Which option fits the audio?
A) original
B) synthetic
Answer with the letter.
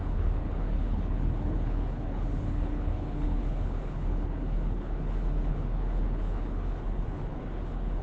B